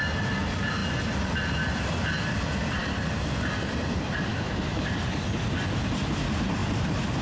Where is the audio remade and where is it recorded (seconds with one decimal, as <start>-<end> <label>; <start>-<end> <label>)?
0.0-4.3 recorded; 4.3-4.9 remade; 4.9-7.2 recorded